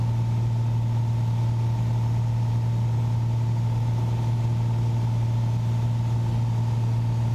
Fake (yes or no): no